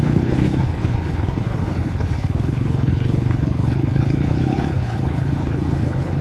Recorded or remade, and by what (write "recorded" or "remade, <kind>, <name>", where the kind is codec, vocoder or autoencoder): remade, codec, HILCodec